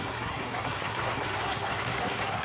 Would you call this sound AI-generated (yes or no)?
yes